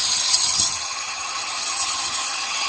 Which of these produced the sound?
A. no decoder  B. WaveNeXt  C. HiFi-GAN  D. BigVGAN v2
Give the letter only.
C